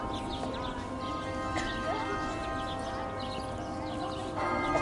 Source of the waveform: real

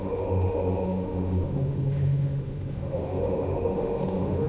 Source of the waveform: fake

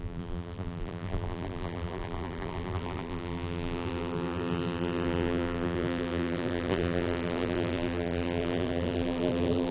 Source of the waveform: fake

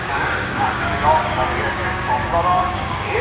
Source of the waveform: fake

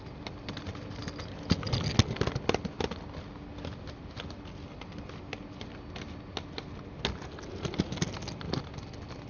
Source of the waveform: real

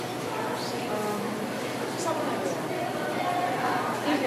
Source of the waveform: fake